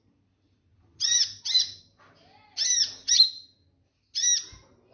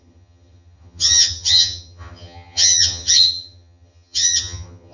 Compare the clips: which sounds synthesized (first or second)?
second